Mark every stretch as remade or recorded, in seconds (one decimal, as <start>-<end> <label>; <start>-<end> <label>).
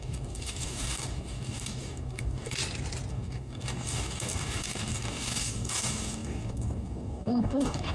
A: 0.0-2.6 remade; 2.6-3.1 recorded; 3.1-7.9 remade